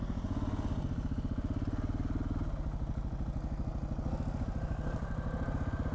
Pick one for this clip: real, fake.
real